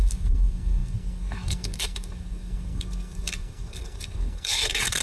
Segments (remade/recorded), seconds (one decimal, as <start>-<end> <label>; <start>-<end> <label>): 0.0-5.0 remade

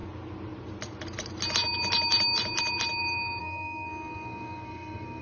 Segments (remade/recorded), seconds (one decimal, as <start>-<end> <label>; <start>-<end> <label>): 0.0-3.4 recorded; 3.4-5.2 remade